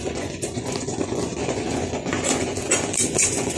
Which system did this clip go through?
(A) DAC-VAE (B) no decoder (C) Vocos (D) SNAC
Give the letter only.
C